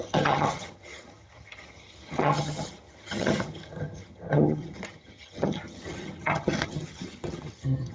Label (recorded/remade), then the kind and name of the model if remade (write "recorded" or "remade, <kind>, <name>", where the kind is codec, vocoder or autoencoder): remade, vocoder, HiFi-GAN